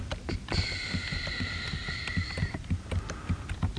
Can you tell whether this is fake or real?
real